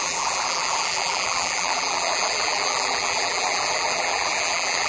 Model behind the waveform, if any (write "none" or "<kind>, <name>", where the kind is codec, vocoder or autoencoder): vocoder, BigVGAN v2